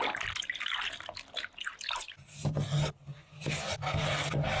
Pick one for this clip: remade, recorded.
recorded